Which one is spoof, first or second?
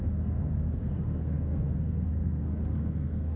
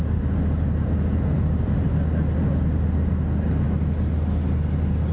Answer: first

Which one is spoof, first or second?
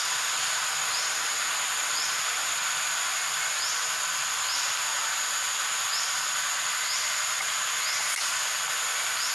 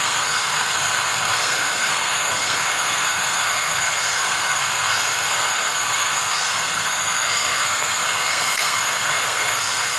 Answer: second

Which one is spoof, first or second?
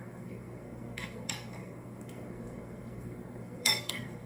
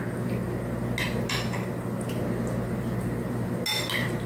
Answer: first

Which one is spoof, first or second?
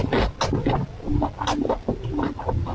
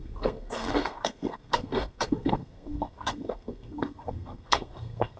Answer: second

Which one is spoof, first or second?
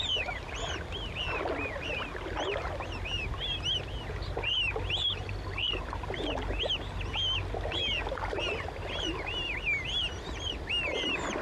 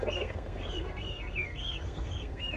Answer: second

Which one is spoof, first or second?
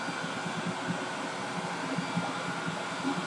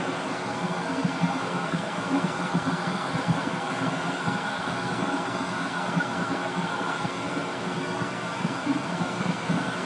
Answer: second